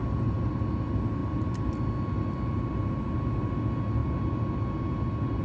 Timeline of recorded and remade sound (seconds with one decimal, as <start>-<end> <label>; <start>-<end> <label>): 0.0-0.6 remade; 0.6-5.4 recorded